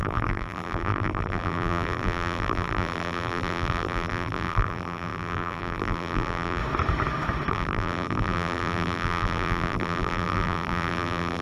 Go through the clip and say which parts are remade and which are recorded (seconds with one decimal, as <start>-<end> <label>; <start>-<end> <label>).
0.0-6.6 remade; 6.6-7.5 recorded; 7.5-11.4 remade